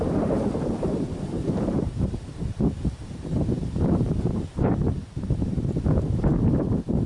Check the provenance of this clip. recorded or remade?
remade